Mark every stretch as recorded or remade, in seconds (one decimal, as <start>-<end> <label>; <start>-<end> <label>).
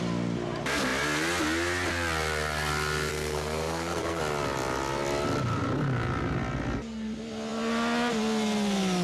0.0-3.1 recorded; 3.1-4.2 remade; 4.2-9.0 recorded